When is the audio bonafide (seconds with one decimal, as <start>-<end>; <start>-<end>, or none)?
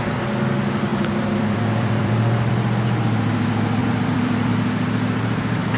0.0-0.9; 2.5-3.8; 4.5-5.8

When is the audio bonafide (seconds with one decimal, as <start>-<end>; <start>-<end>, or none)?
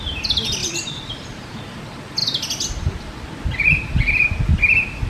0.0-0.6; 1.6-5.1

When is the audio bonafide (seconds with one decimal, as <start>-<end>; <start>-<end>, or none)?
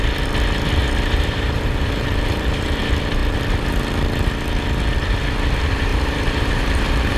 0.0-0.8; 2.8-5.9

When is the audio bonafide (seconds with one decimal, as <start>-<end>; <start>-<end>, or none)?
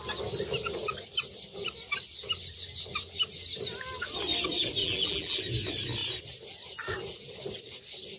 0.0-4.8; 5.4-8.2